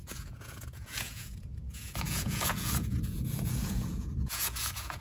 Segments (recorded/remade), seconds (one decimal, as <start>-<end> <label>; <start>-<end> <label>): 0.0-5.0 remade